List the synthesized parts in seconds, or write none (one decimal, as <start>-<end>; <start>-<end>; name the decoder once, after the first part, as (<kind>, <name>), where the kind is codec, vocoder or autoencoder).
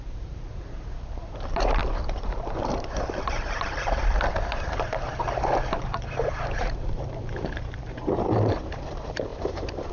0.0-4.0 (vocoder, BigVGAN v2); 6.8-9.9